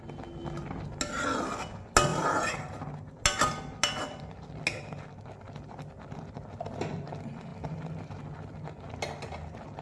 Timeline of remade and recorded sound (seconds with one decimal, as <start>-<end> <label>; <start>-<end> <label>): 0.0-2.1 recorded; 2.1-3.2 remade; 3.2-9.8 recorded